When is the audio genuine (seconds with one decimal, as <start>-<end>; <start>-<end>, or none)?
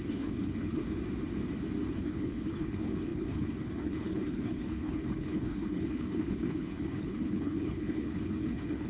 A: 0.8-1.9